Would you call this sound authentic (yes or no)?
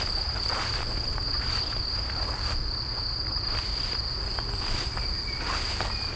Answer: yes